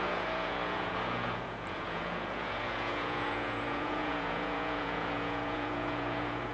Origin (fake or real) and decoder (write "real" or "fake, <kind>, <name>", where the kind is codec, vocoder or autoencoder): fake, vocoder, Vocos